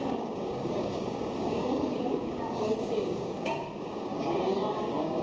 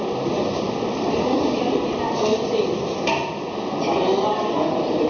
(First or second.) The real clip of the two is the second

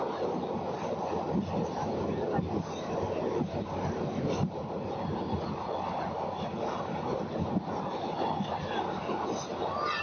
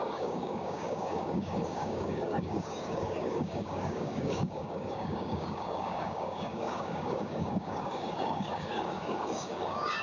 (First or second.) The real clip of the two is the first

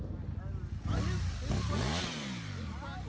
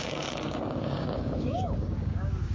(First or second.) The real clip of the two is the first